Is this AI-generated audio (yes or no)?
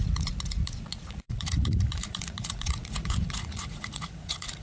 yes